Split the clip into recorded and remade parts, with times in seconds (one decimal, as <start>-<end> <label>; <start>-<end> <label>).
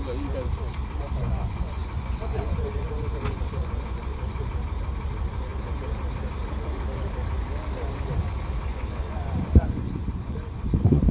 0.0-1.2 recorded; 1.2-4.5 remade; 4.5-8.7 recorded; 8.7-11.1 remade